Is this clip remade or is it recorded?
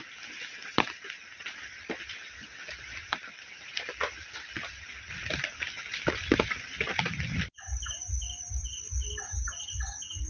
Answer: remade